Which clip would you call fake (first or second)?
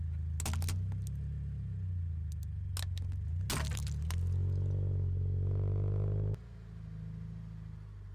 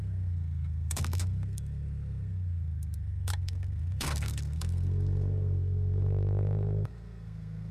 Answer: second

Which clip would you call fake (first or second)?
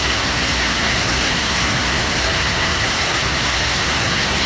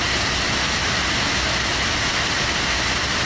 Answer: first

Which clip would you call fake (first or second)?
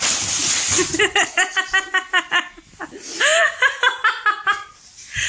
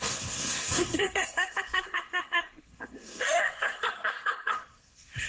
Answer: second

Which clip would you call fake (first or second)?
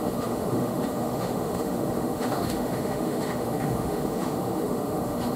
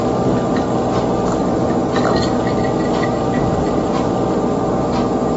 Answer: first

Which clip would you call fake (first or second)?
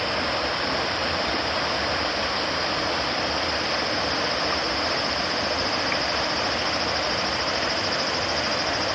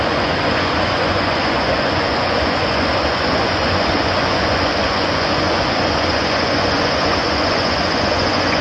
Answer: second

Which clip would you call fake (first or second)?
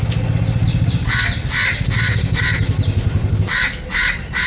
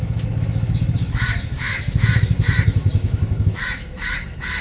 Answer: second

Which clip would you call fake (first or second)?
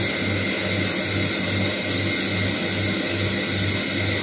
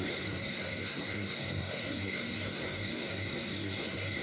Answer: second